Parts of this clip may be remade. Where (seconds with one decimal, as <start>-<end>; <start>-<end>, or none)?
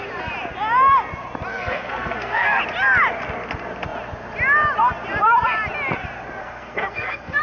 1.5-2.6; 6.4-7.4